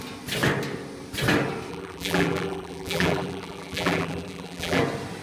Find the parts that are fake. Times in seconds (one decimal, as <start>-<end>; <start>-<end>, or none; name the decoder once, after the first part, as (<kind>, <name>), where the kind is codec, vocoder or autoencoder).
1.7-4.8 (vocoder, BigVGAN v2)